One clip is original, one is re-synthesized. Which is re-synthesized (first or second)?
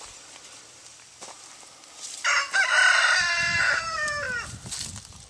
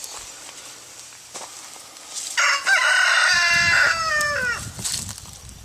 first